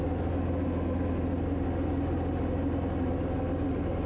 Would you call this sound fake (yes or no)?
no